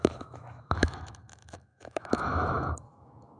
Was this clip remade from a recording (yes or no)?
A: yes